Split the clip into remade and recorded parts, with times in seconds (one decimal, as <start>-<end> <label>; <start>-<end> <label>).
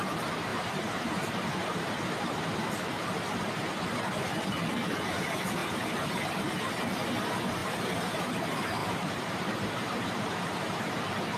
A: 0.0-0.5 recorded; 0.5-4.3 remade; 4.3-5.6 recorded; 5.6-6.7 remade; 6.7-7.6 recorded; 7.6-8.4 remade; 8.4-8.8 recorded; 8.8-10.9 remade; 10.9-11.4 recorded